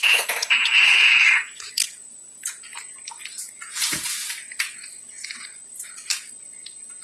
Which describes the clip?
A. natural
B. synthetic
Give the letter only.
B